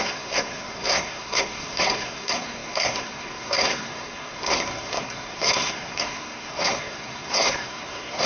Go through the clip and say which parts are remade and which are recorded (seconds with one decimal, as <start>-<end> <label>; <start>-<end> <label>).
0.0-8.3 remade